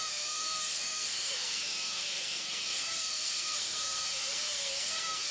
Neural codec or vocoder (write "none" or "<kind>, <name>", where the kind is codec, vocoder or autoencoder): codec, SNAC